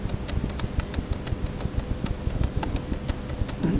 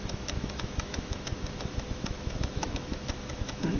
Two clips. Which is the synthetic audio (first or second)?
second